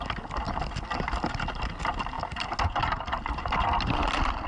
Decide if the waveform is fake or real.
real